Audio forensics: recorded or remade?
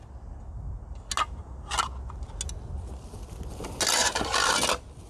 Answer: recorded